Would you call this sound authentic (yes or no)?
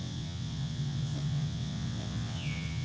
no